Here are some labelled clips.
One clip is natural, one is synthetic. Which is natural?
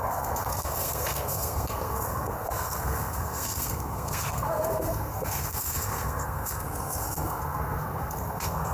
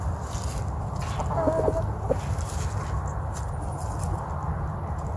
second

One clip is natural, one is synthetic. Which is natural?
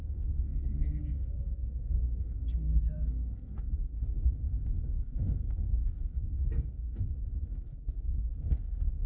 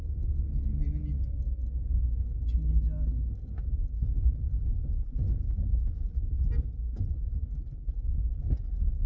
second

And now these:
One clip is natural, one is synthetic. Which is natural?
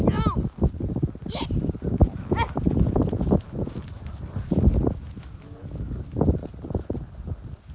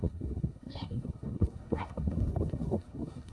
first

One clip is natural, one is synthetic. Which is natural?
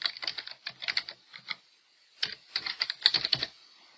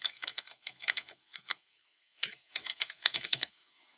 first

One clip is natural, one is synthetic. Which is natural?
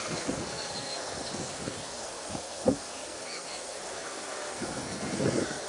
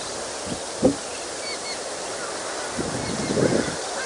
second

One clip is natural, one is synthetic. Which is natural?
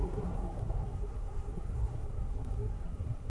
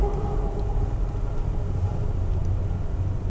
second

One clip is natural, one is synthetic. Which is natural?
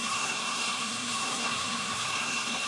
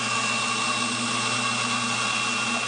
second